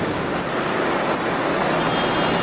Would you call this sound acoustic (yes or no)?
yes